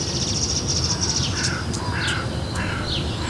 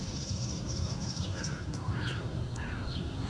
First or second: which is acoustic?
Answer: first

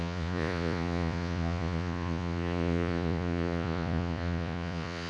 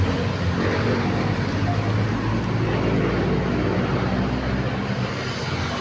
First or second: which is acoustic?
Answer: second